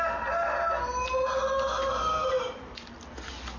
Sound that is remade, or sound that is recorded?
recorded